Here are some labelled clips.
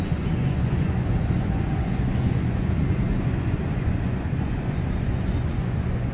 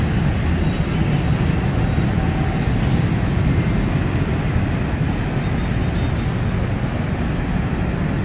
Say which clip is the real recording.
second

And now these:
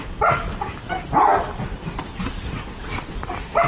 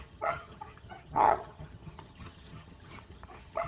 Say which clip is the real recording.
first